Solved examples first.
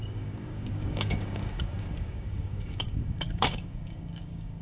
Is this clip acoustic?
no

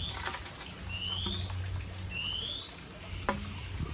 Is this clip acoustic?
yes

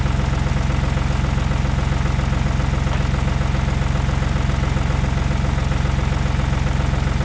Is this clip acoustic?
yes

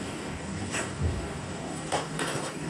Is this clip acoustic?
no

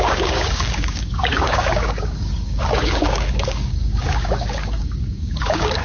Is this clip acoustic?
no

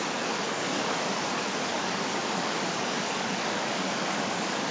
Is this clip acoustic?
no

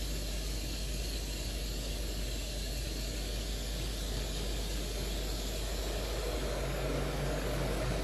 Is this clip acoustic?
no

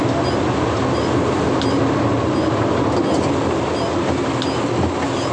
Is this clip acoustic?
yes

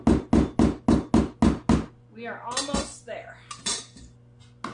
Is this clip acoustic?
yes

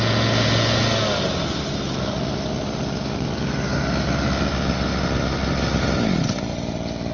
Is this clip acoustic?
yes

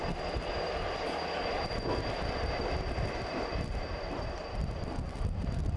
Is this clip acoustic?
yes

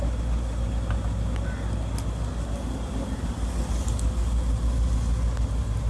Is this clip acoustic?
yes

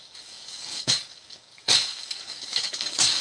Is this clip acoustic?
no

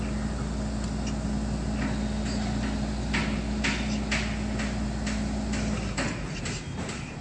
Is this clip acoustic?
yes